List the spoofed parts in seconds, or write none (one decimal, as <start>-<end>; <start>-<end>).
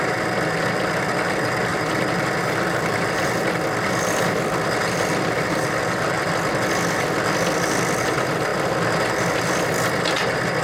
1.7-6.3